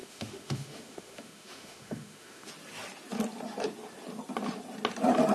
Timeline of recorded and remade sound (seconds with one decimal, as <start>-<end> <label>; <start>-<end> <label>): 0.0-2.5 remade; 2.5-5.3 recorded